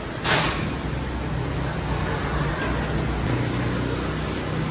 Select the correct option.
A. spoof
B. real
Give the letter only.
B